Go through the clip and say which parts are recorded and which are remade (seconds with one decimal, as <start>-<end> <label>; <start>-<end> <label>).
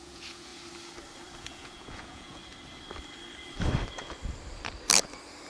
0.0-0.5 remade; 0.5-1.4 recorded; 1.4-2.4 remade; 2.4-5.5 recorded